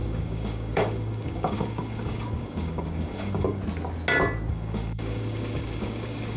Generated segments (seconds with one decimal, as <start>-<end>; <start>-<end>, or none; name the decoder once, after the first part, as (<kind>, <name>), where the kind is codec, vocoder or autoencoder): 0.0-3.6 (codec, DAC); 4.5-6.4

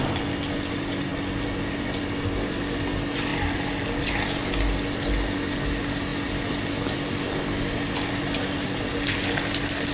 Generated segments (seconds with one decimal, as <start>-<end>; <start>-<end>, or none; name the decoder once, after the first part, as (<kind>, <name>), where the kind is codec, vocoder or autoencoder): none

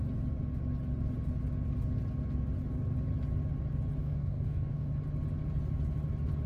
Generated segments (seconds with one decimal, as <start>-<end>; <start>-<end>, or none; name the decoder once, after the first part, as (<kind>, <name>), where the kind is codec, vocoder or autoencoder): 4.0-4.9 (codec, DAC)

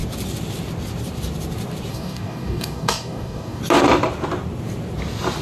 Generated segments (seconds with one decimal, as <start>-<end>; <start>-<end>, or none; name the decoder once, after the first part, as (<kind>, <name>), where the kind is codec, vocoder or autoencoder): 1.9-3.6 (codec, DAC)